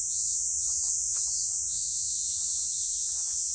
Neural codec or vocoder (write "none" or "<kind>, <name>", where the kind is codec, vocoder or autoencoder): vocoder, Vocos